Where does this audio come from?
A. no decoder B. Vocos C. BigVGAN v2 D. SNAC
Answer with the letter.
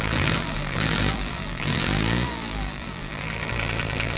C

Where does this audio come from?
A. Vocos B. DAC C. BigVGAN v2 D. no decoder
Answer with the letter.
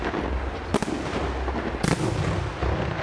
D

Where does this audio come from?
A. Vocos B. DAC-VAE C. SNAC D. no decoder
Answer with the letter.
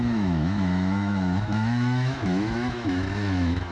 B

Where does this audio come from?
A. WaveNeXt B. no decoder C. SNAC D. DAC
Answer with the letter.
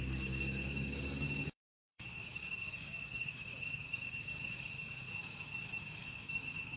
D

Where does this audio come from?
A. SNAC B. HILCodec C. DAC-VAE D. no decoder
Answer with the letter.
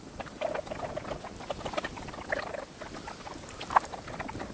D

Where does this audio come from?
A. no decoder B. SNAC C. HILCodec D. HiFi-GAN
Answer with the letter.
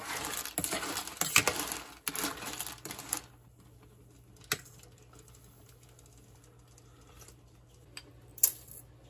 A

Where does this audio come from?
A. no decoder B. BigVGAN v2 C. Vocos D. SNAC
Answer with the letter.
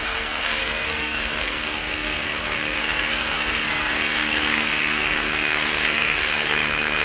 D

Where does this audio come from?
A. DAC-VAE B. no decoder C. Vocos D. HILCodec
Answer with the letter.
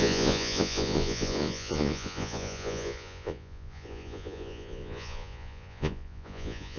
C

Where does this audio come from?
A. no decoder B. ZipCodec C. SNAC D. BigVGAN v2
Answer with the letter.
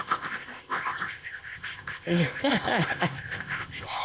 B